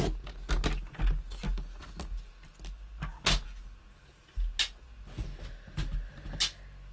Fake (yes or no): no